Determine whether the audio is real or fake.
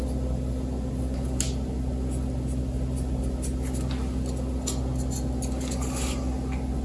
real